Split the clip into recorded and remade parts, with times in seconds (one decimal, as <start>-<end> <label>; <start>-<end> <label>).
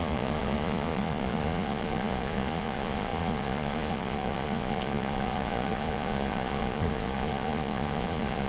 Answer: 0.0-8.5 remade